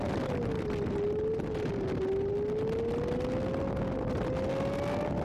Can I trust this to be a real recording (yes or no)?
yes